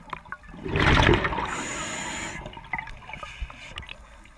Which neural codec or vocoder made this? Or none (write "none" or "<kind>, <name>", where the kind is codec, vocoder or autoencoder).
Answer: none